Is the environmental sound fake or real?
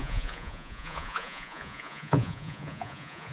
fake